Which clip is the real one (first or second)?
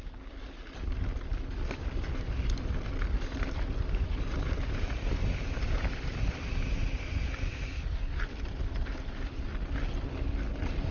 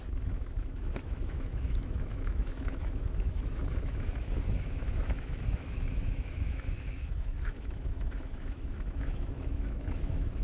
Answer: first